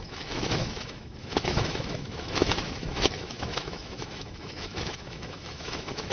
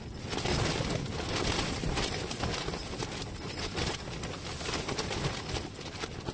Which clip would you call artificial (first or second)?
first